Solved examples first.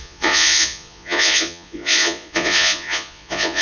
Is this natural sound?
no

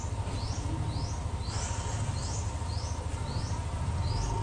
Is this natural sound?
yes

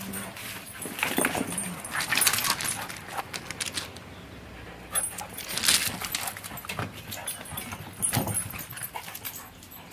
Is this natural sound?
yes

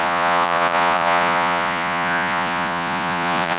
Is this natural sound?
no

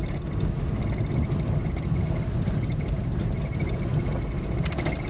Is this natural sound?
yes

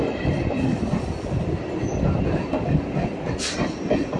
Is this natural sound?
yes